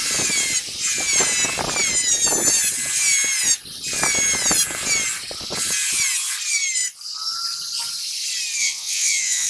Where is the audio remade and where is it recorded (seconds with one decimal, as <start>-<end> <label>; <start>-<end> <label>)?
0.0-8.6 recorded; 8.6-9.5 remade